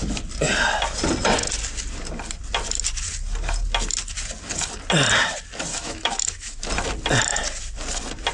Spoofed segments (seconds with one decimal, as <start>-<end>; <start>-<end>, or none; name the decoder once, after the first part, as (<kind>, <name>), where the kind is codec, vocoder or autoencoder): 5.7-6.6 (autoencoder, DAC-VAE)